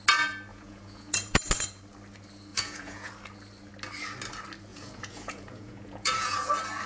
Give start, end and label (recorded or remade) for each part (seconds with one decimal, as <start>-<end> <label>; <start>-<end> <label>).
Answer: 0.0-0.5 recorded; 0.5-1.5 remade; 1.5-2.5 recorded; 2.5-3.1 remade; 3.1-4.7 recorded; 4.7-6.5 remade; 6.5-6.9 recorded